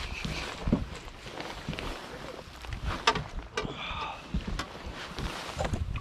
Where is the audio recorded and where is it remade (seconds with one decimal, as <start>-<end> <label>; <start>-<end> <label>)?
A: 0.0-6.0 recorded